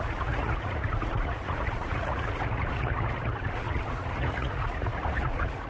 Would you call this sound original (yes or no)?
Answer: no